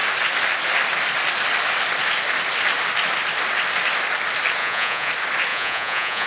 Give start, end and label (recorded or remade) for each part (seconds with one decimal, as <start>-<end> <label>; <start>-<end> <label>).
0.0-4.6 recorded; 4.6-5.1 remade; 5.1-5.5 recorded; 5.5-6.3 remade